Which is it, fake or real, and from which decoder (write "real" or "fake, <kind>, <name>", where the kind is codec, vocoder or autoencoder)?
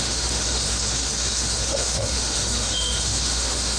fake, autoencoder, DAC-VAE